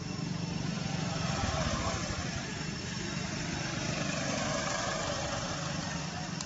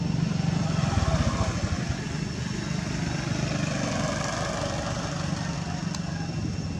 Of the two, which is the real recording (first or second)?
second